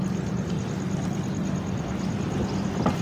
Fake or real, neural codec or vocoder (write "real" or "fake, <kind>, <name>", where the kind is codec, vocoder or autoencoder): real